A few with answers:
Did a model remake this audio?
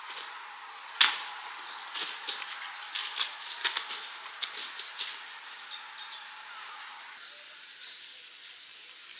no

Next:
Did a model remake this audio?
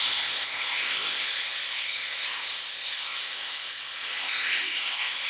yes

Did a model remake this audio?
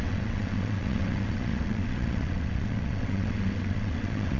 yes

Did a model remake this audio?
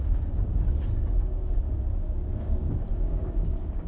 yes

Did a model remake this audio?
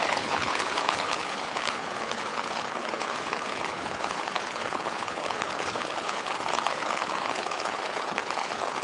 yes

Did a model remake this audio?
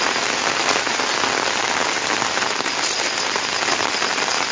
no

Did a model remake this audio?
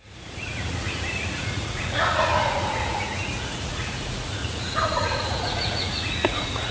yes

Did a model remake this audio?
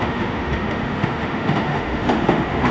yes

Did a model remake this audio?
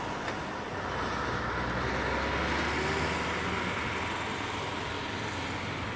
no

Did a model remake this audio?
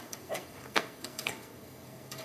yes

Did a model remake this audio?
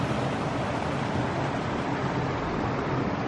no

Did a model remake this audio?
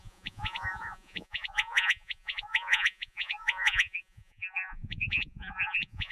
yes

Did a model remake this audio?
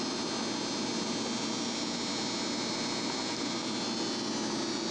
no